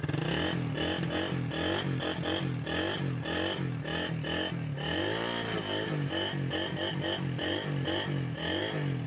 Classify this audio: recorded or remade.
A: recorded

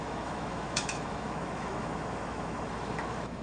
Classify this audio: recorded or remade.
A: remade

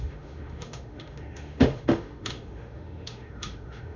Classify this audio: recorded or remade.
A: remade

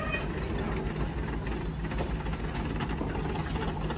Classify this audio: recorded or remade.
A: recorded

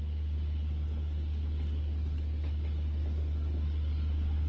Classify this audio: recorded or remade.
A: recorded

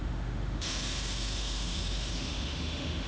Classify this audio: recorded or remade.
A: remade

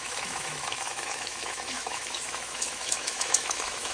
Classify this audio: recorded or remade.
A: remade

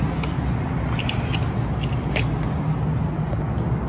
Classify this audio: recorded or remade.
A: recorded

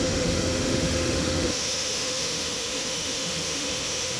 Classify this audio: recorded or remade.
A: remade